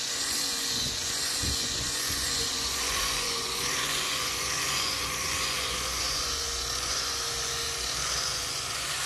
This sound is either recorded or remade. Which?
remade